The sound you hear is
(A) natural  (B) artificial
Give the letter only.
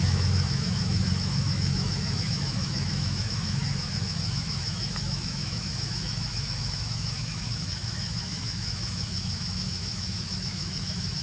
B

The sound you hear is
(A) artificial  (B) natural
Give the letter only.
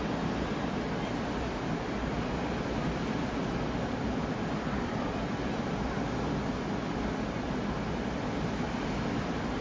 B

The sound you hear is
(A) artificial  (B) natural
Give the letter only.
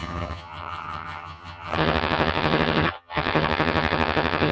A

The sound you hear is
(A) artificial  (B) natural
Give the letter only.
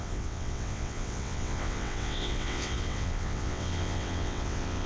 A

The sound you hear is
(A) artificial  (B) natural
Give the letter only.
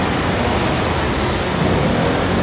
B